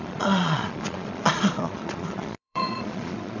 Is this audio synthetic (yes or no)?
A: yes